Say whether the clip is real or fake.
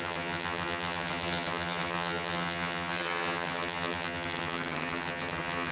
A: fake